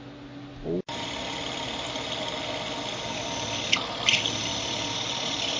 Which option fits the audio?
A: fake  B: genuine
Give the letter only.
B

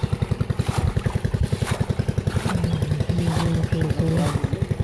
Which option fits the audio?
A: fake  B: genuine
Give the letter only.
B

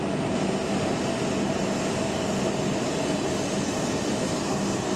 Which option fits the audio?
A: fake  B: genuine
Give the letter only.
B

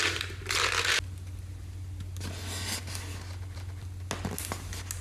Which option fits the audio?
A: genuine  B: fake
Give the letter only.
A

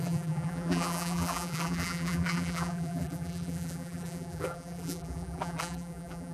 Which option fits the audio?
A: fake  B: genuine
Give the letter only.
A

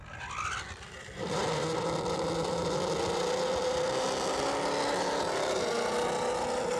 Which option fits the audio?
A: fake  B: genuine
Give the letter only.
B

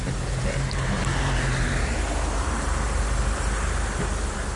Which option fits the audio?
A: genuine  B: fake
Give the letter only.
B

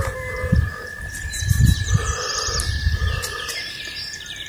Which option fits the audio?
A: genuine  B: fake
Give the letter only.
B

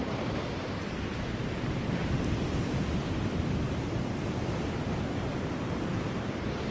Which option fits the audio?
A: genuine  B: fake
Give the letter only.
B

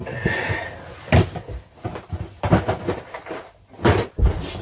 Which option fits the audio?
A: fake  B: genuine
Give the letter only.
B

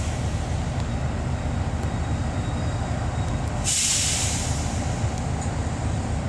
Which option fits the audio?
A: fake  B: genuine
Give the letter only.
B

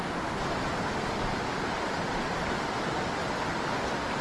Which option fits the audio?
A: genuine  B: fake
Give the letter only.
A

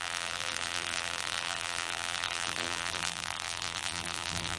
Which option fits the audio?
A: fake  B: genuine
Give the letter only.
A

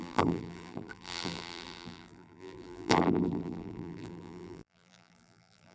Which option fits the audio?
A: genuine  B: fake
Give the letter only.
B